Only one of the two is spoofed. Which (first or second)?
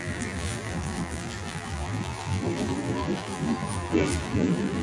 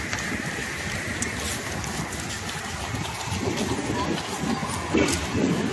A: first